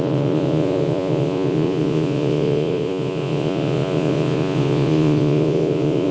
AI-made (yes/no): yes